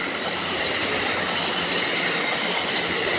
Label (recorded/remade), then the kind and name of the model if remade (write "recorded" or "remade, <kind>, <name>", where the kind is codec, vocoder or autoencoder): recorded